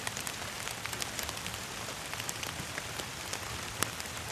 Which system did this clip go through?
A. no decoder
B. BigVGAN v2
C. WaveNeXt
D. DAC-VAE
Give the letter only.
A